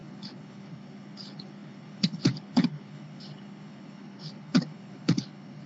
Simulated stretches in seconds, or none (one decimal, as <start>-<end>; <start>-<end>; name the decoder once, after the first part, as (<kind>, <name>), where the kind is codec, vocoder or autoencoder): 0.0-5.7 (codec, HILCodec)